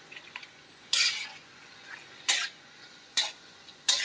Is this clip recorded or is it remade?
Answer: remade